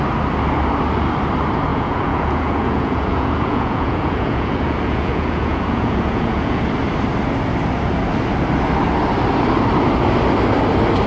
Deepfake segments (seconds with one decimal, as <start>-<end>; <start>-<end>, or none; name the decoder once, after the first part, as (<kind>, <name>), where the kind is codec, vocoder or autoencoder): 1.7-6.6 (vocoder, Vocos)